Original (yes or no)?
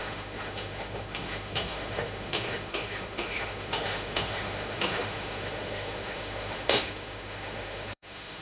no